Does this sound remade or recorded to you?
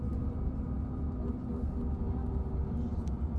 recorded